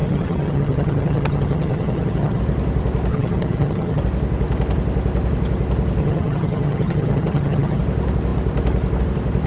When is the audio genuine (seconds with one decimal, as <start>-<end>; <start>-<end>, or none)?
2.4-3.1; 4.0-6.0; 7.8-9.5